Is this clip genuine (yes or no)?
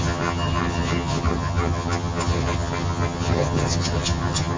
no